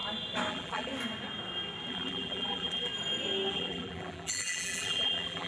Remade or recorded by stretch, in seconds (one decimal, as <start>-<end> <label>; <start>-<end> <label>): 0.0-0.5 recorded; 0.5-0.9 remade; 0.9-1.9 recorded; 1.9-2.9 remade; 2.9-3.5 recorded; 3.5-5.5 remade